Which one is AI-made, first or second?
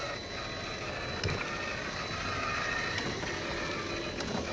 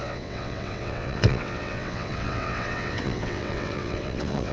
second